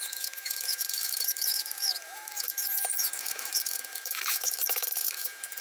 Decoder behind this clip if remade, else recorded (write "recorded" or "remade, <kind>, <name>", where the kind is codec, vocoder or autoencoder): remade, autoencoder, DAC-VAE